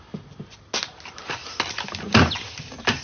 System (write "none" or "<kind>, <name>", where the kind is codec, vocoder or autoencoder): none